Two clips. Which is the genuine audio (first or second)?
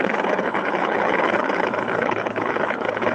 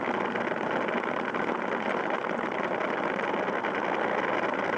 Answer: second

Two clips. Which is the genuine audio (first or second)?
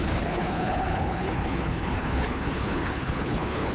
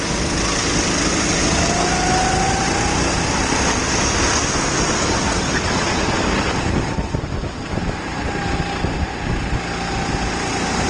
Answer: second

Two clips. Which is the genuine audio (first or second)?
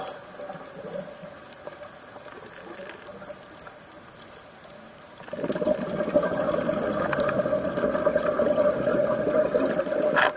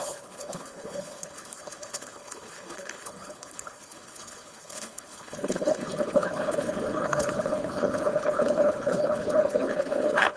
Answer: first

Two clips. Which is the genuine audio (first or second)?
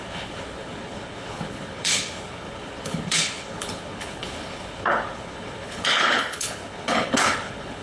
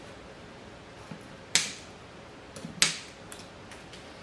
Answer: second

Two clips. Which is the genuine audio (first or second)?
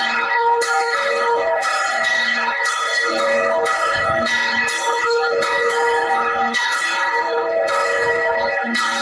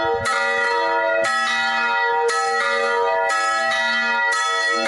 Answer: second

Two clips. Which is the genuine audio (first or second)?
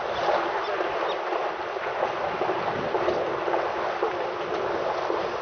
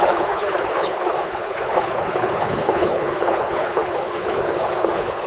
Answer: first